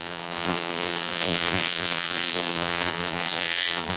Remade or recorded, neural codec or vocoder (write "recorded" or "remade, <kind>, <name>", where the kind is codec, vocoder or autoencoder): remade, vocoder, BigVGAN v2